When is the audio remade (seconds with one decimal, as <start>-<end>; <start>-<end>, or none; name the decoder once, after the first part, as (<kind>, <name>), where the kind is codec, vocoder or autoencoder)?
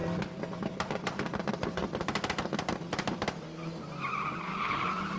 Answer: 0.5-1.8 (vocoder, BigVGAN v2); 2.9-5.2